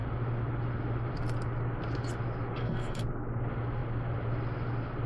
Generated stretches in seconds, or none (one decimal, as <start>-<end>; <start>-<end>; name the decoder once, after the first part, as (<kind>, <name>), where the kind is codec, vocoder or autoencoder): 2.5-3.0 (codec, SNAC)